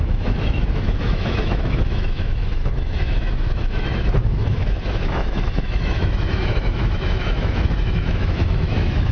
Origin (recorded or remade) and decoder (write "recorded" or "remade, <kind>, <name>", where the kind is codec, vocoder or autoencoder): remade, autoencoder, DAC-VAE